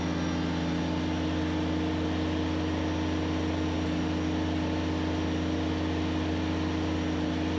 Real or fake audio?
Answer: real